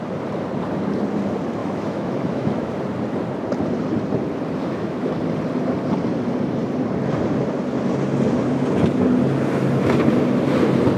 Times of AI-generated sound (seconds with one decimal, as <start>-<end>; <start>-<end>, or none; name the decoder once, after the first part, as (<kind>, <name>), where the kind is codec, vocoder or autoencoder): 1.6-2.7 (autoencoder, DAC-VAE); 4.6-5.2